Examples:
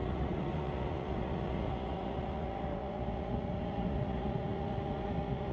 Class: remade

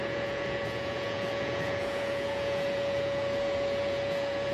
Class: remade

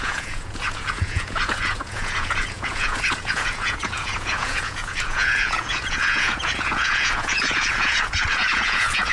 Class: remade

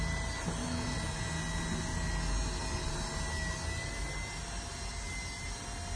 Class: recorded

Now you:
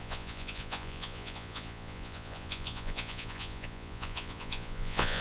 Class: remade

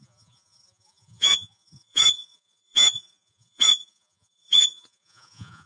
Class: remade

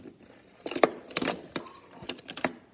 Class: recorded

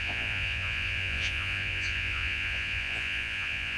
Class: remade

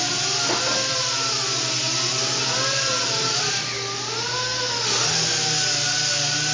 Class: recorded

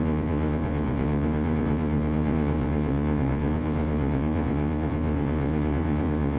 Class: remade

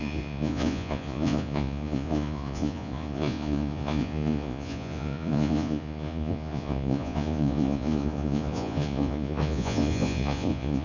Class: remade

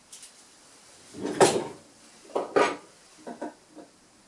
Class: recorded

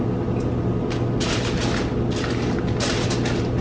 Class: recorded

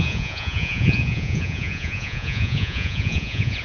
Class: remade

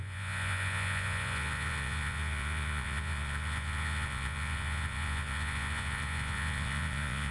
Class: remade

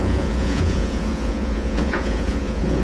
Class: remade